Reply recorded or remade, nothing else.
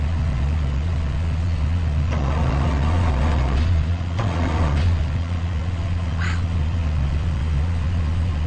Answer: remade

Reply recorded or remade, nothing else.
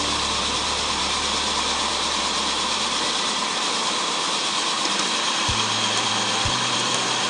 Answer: remade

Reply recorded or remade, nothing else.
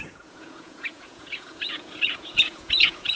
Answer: remade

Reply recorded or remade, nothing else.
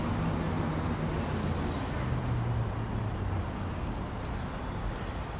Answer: recorded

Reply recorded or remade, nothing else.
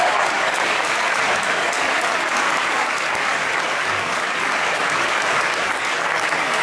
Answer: remade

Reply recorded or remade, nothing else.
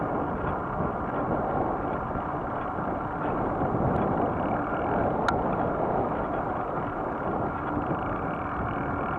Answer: recorded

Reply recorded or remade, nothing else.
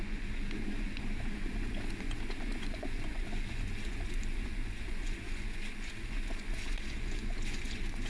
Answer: remade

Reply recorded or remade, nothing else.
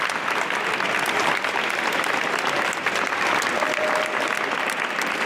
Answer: recorded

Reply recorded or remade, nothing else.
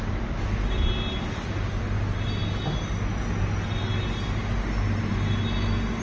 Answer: recorded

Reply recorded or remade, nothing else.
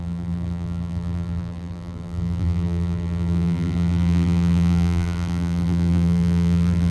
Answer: remade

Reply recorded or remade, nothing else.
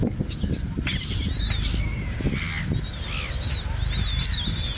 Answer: recorded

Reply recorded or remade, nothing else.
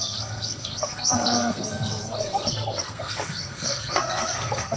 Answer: remade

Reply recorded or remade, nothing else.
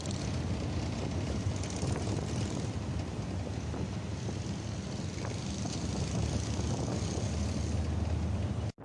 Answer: recorded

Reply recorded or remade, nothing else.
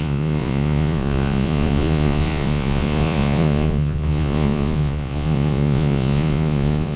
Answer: remade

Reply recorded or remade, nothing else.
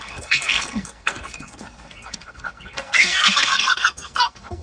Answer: remade